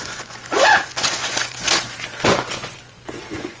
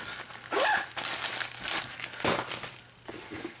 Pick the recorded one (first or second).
second